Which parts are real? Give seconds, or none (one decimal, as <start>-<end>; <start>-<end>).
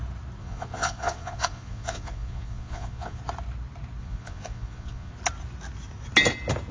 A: 0.0-0.4; 3.2-4.0; 5.1-6.7